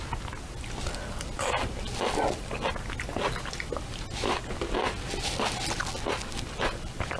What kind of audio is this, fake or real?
real